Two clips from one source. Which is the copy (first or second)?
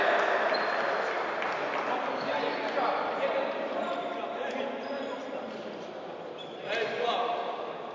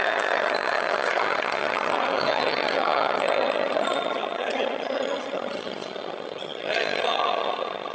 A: second